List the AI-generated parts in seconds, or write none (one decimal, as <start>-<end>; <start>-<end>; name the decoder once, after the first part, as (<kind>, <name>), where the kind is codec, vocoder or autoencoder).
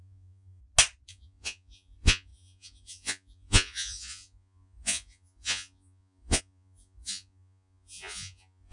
0.0-0.6 (vocoder, Vocos); 1.1-8.7